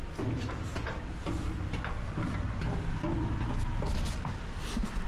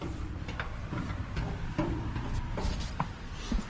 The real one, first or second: first